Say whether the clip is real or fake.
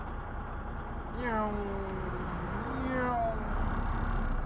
real